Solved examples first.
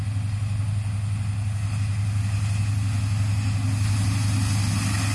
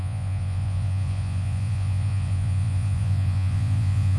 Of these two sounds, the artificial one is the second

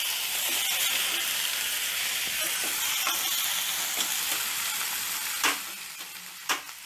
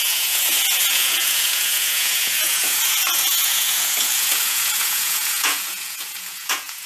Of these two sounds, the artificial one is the second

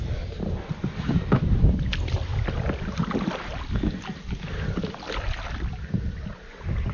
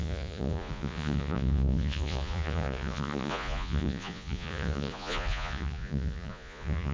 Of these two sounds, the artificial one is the second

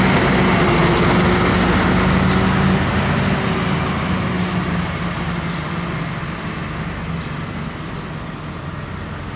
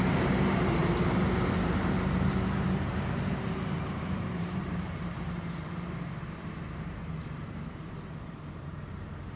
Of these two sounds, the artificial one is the second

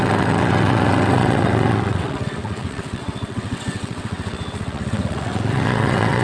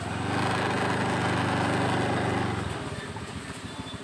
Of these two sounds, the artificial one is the first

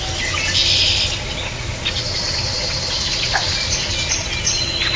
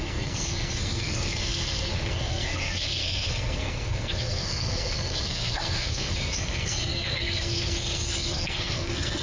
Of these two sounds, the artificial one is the second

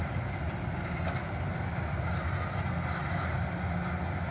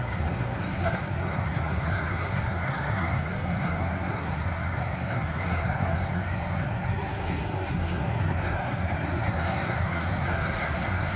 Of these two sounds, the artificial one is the second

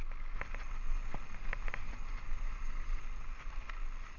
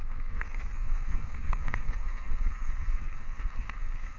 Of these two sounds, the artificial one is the second